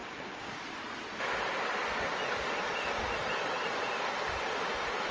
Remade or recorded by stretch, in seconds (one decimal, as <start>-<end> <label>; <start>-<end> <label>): 0.0-0.6 remade; 0.6-5.1 recorded